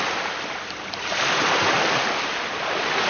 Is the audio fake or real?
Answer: real